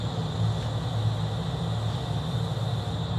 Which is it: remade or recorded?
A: recorded